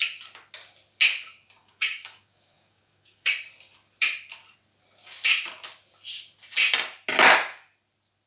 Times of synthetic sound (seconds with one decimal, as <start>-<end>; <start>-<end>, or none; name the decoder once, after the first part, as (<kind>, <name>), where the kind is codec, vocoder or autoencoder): 1.6-3.3 (codec, DAC)